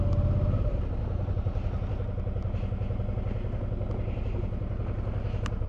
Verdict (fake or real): real